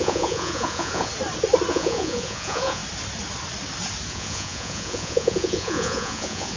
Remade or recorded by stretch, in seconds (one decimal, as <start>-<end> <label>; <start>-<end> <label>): 0.0-1.1 remade; 1.1-1.7 recorded; 1.7-2.8 remade; 2.8-4.1 recorded; 4.1-6.6 remade